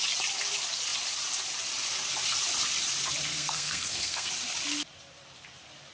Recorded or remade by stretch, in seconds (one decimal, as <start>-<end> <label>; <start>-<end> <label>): 0.0-3.3 recorded; 3.3-4.3 remade; 4.3-5.9 recorded